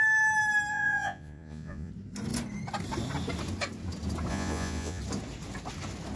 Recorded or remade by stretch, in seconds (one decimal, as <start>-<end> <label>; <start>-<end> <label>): 0.0-0.7 recorded; 0.7-1.9 remade; 1.9-4.3 recorded; 4.3-5.0 remade; 5.0-6.2 recorded